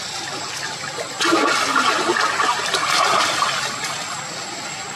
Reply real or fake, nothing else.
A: real